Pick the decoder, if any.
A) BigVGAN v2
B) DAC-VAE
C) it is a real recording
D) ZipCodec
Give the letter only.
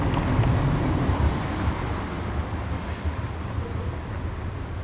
C